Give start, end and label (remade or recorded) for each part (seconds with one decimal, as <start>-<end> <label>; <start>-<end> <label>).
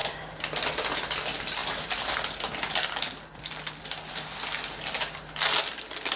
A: 0.0-6.2 recorded